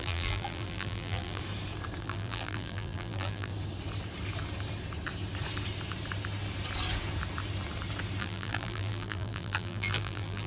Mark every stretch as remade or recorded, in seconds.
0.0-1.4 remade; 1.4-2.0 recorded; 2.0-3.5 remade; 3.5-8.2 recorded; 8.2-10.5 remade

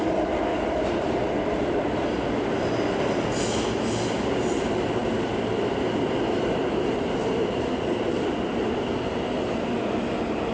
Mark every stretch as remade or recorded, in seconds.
0.0-10.5 recorded

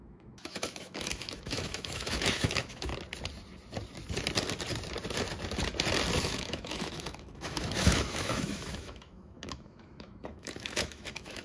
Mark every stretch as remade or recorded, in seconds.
0.0-2.9 remade; 2.9-6.2 recorded; 6.2-11.4 remade